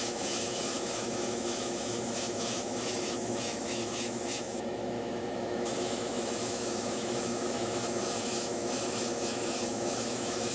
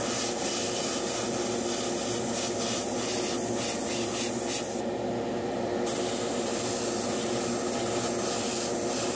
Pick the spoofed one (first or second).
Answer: first